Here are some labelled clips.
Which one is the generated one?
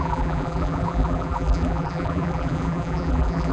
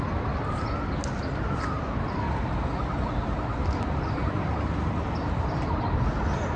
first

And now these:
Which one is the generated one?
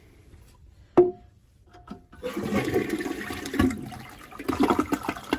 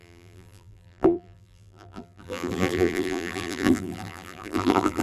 second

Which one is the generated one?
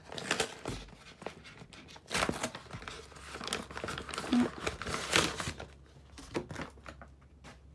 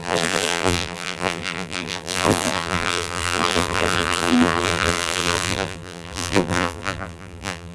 second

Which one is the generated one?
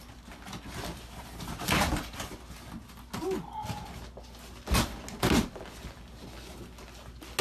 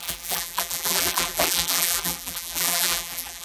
second